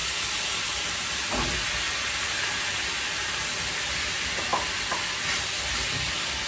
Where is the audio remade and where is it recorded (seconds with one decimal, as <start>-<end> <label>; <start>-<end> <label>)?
0.0-6.5 recorded